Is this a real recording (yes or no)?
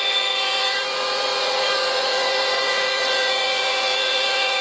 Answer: no